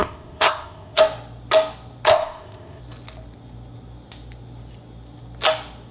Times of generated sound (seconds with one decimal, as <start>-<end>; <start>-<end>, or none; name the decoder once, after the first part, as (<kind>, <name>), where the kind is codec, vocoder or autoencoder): 0.0-1.0 (codec, ZipCodec); 2.1-2.8